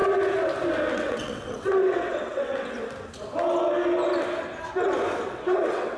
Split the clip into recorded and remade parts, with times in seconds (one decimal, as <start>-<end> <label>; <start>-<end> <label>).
0.0-0.9 recorded; 0.9-2.8 remade; 2.8-5.3 recorded; 5.3-6.0 remade